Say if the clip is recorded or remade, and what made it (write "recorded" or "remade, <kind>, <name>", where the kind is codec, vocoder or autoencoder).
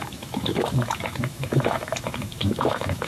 remade, autoencoder, DAC-VAE